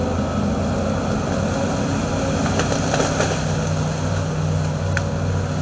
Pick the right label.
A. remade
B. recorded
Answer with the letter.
A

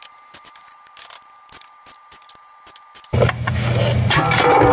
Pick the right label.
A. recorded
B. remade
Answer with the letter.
A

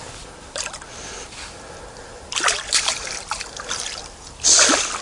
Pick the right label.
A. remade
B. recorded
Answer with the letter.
B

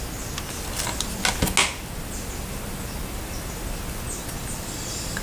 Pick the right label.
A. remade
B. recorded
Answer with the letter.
B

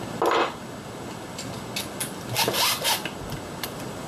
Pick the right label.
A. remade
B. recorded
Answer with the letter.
B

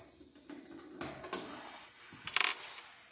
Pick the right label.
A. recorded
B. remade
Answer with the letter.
A